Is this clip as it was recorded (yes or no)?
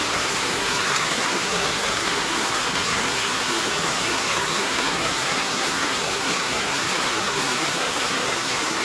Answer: no